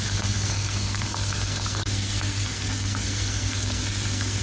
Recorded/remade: remade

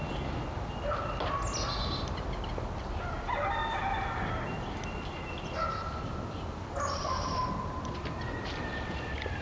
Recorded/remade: recorded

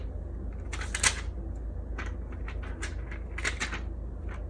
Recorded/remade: recorded